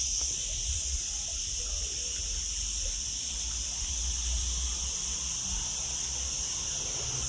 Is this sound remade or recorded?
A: recorded